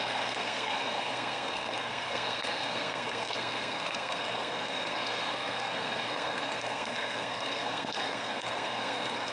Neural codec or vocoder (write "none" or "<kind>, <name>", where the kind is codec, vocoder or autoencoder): codec, SNAC